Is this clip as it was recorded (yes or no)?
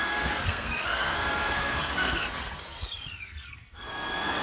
no